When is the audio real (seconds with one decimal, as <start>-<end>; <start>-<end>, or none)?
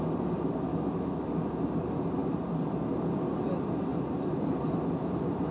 0.0-0.7; 1.5-5.5